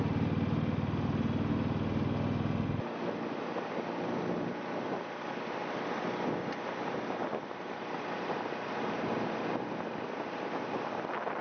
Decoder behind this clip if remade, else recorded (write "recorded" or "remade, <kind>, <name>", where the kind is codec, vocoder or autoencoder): recorded